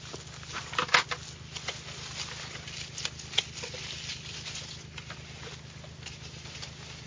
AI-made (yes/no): no